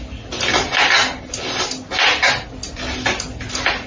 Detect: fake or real real